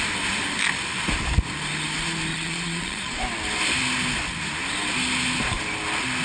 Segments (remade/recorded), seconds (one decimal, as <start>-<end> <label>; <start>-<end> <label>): 0.0-2.3 recorded; 2.3-3.2 remade; 3.2-6.2 recorded